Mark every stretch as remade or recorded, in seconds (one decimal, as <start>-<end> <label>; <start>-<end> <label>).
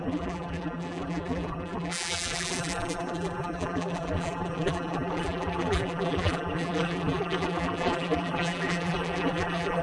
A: 0.0-9.8 remade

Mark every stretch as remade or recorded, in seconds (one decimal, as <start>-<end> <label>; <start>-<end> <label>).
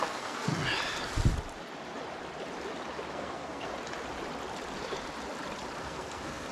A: 0.0-0.5 remade; 0.5-3.1 recorded; 3.1-3.7 remade; 3.7-5.8 recorded; 5.8-6.5 remade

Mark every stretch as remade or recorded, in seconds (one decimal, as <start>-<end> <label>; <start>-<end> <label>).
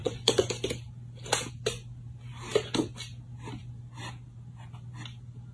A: 0.0-0.5 remade; 0.5-5.5 recorded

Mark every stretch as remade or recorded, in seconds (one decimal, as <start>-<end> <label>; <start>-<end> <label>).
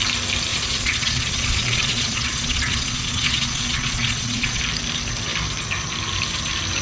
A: 0.0-0.5 recorded; 0.5-4.6 remade; 4.6-6.8 recorded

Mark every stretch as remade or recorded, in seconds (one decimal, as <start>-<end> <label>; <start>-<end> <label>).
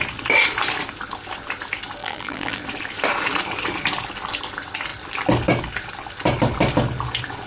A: 0.0-2.0 recorded; 2.0-2.6 remade; 2.6-7.5 recorded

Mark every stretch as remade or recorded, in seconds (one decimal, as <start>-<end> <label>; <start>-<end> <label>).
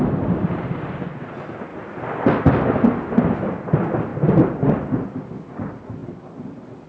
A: 0.0-1.7 recorded; 1.7-2.3 remade; 2.3-6.0 recorded; 6.0-6.9 remade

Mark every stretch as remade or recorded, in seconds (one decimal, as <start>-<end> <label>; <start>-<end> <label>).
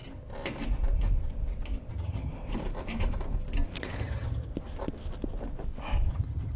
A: 0.0-1.9 recorded; 1.9-2.3 remade; 2.3-4.0 recorded; 4.0-4.5 remade; 4.5-6.1 recorded; 6.1-6.6 remade